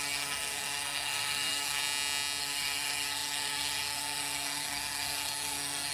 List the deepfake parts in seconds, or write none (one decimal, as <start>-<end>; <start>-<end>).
0.0-1.8; 2.4-5.9